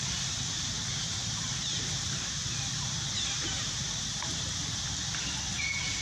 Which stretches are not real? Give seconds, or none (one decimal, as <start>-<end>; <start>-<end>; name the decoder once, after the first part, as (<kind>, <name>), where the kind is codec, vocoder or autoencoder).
1.2-4.8 (vocoder, BigVGAN v2)